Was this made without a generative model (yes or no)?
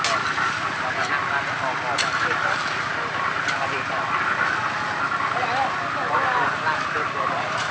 yes